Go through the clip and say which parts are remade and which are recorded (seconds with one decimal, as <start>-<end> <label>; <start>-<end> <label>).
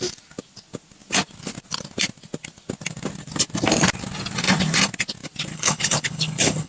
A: 0.0-5.5 recorded; 5.5-6.7 remade